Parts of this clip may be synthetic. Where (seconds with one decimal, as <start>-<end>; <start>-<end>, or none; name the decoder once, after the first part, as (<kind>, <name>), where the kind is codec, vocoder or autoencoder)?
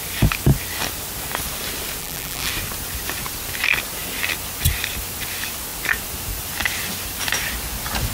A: 2.0-2.5 (vocoder, BigVGAN v2)